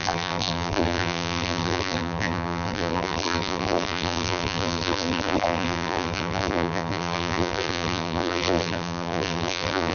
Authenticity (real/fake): fake